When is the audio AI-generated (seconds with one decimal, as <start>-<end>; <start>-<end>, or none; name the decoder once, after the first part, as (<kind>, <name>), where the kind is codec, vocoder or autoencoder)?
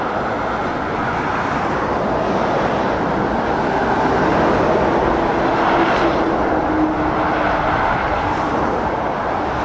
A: 0.6-1.2 (vocoder, Vocos)